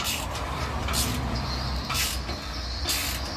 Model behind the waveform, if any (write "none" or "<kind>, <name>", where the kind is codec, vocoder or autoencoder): none